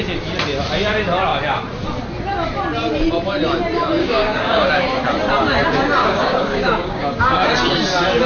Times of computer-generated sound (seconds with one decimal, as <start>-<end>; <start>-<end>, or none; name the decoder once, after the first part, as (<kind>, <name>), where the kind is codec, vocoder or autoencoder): 4.0-4.7 (codec, DAC); 6.0-7.5